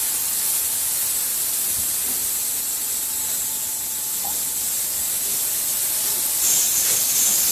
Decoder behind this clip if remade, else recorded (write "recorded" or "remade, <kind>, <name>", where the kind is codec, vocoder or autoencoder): recorded